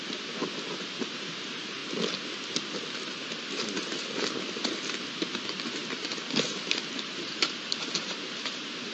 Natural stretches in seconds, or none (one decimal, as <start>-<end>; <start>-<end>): 0.4-1.0; 1.8-5.6; 6.1-7.0

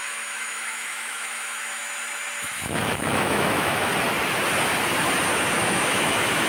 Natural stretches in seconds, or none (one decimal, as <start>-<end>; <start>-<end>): 1.8-2.4; 3.9-5.5

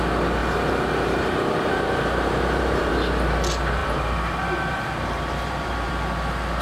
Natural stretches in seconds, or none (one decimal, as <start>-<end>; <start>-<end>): 0.0-0.4; 2.9-3.8; 5.9-6.6

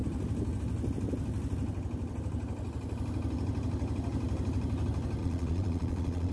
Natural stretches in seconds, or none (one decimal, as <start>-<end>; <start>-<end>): 0.0-5.2